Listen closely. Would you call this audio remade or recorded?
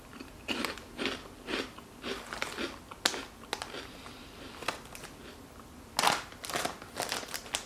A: recorded